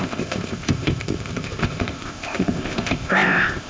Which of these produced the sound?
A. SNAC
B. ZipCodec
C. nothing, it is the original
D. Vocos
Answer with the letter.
B